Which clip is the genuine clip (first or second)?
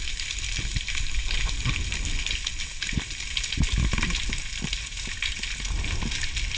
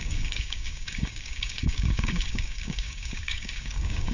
first